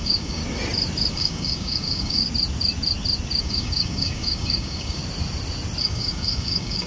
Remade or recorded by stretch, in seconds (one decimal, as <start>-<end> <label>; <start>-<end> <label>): 0.0-0.4 remade; 0.4-1.1 recorded; 1.1-2.2 remade; 2.2-3.4 recorded; 3.4-5.0 remade; 5.0-5.8 recorded; 5.8-6.9 remade